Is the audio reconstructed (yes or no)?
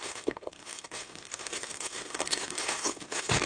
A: yes